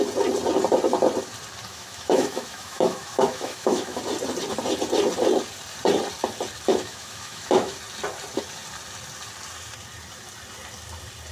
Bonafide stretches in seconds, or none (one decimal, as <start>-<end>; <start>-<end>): 0.0-1.7; 4.0-6.7; 7.8-11.3